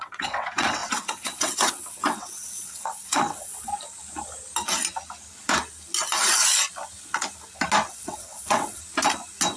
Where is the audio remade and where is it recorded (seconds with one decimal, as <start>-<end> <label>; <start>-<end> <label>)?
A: 0.0-3.7 remade; 3.7-7.9 recorded; 7.9-8.8 remade; 8.8-9.6 recorded